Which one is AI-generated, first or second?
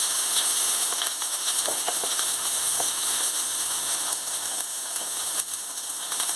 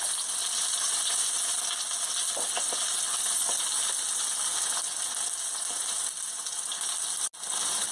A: first